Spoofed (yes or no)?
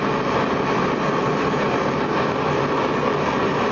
no